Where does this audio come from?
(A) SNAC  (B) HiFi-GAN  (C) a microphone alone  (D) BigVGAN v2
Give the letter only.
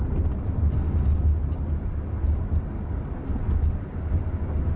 C